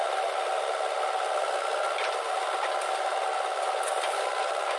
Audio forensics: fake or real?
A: real